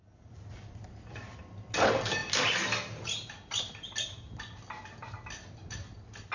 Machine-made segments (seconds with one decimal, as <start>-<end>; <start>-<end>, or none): none